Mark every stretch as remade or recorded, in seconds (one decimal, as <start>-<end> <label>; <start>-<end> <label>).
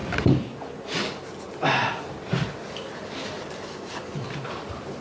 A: 0.0-5.0 recorded